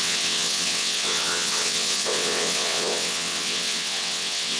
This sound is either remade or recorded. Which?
remade